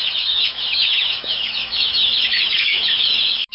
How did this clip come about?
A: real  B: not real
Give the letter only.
B